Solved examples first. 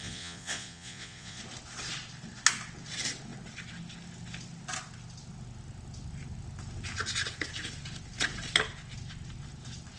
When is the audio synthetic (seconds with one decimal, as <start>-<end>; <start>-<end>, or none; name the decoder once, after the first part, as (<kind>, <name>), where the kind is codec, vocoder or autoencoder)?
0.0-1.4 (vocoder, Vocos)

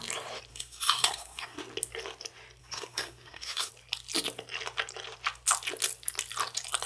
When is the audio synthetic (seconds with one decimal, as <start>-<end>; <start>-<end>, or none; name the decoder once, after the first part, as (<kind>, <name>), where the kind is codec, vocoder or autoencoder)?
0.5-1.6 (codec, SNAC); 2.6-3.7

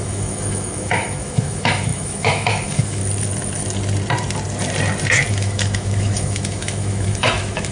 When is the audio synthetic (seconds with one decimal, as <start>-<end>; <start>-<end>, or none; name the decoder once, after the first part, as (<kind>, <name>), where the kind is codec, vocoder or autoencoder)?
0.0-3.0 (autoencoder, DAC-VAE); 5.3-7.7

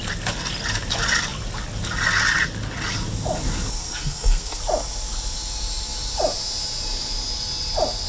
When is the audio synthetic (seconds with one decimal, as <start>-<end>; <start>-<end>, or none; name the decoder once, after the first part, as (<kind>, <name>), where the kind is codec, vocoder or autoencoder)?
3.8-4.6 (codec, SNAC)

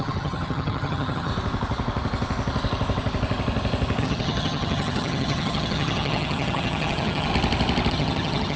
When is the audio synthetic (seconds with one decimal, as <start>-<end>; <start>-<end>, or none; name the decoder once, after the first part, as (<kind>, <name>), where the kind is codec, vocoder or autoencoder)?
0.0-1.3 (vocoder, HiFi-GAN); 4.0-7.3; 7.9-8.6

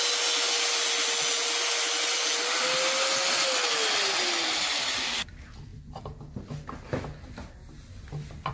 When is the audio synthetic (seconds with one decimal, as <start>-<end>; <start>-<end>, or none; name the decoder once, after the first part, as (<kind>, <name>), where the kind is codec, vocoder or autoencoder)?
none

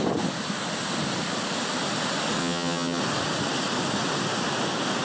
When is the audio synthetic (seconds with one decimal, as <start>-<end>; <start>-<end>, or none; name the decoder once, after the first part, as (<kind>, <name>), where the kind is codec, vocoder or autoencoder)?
2.4-3.0 (vocoder, HiFi-GAN)